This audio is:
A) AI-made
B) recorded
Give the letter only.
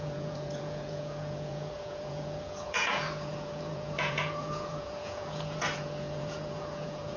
A